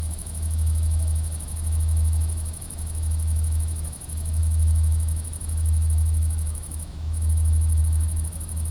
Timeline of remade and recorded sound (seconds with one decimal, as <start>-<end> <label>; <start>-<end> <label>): 0.0-8.7 remade